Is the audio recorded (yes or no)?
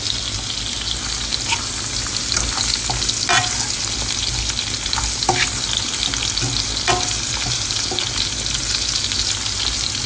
yes